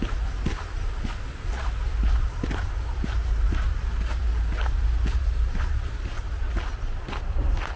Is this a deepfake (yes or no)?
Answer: no